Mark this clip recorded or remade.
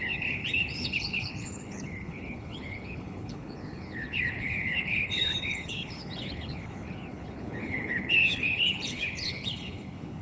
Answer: remade